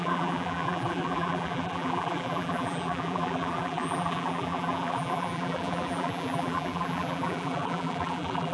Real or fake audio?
fake